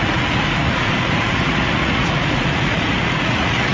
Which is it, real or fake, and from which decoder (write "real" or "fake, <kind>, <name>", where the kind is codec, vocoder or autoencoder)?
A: fake, vocoder, Vocos